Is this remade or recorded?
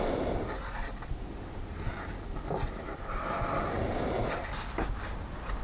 recorded